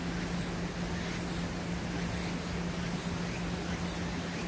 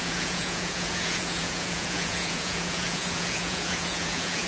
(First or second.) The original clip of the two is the first